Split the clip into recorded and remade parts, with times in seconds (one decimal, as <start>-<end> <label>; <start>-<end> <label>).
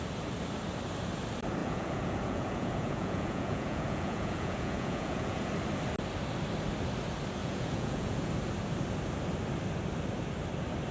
0.0-1.6 recorded; 1.6-5.5 remade; 5.5-7.4 recorded; 7.4-8.3 remade; 8.3-10.9 recorded